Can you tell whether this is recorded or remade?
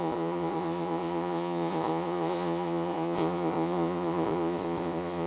remade